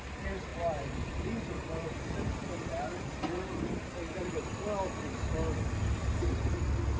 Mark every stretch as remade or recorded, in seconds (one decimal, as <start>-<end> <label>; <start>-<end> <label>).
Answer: 0.0-7.0 recorded